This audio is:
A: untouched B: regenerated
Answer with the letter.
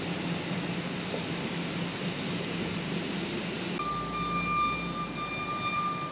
A